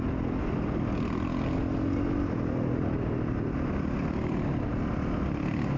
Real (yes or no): yes